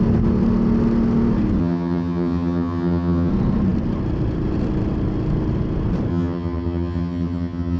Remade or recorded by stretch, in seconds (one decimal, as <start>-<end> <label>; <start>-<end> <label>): 0.0-1.6 recorded; 1.6-3.3 remade; 3.3-6.1 recorded; 6.1-7.8 remade